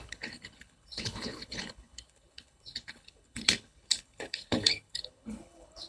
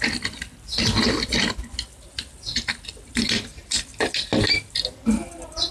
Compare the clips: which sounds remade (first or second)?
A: first